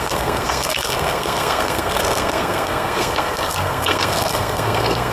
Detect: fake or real fake